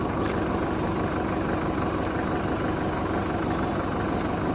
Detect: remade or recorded recorded